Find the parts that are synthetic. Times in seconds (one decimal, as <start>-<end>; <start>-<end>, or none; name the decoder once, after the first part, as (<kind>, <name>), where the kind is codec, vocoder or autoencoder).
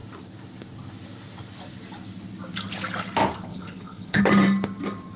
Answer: 3.5-4.2 (codec, HILCodec)